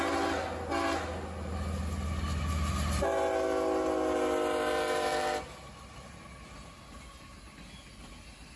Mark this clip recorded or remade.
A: recorded